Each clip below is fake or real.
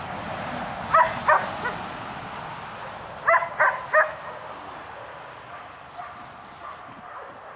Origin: real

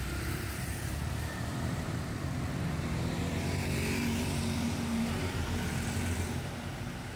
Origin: fake